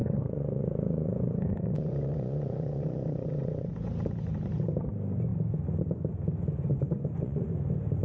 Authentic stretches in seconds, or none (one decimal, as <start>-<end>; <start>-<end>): 3.7-6.7; 7.5-8.0